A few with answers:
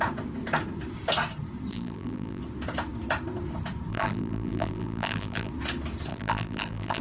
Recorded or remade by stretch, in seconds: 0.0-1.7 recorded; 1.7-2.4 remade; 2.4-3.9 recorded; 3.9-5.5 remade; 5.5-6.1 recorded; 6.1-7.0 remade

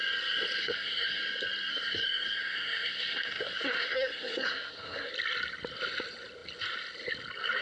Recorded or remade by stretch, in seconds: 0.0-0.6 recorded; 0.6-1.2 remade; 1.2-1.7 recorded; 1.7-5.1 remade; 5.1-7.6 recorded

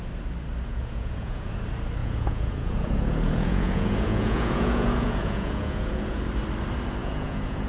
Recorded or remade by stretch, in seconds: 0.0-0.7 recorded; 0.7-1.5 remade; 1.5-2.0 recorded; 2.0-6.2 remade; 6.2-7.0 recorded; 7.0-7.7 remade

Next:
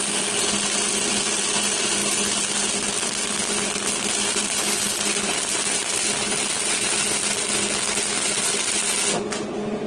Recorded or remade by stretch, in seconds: 0.0-9.9 recorded

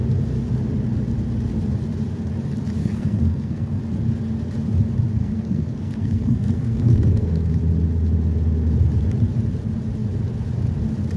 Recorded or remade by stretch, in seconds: 0.0-2.8 recorded; 2.8-3.8 remade; 3.8-5.2 recorded; 5.2-7.5 remade; 7.5-11.2 recorded

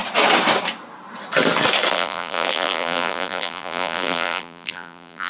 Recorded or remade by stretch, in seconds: 0.0-1.9 recorded; 1.9-5.3 remade

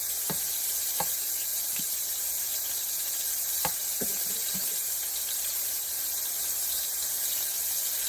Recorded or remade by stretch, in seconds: 0.0-5.9 remade; 5.9-6.6 recorded; 6.6-8.1 remade